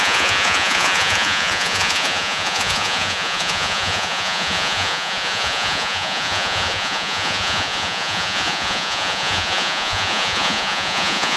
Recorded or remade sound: remade